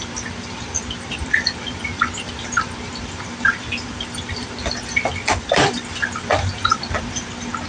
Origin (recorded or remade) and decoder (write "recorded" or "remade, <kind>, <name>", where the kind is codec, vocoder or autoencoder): remade, vocoder, BigVGAN v2